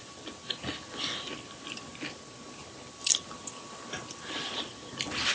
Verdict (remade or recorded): recorded